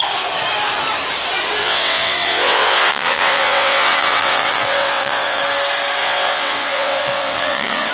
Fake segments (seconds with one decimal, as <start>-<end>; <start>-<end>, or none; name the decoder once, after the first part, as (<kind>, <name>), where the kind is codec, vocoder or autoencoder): 1.6-5.4 (vocoder, WaveNeXt); 6.0-7.9